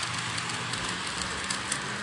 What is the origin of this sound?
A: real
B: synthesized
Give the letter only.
A